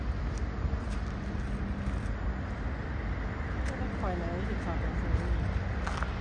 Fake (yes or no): no